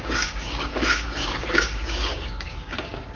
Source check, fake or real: fake